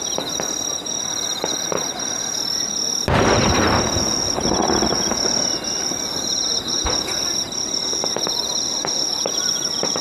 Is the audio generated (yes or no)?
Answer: no